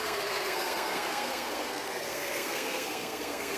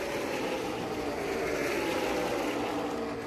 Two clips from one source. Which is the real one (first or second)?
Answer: second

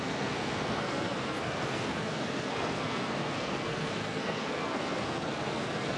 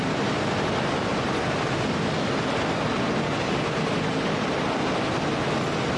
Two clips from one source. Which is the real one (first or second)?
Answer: second